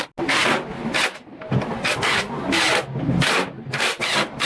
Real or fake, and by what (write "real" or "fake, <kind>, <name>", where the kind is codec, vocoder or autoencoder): real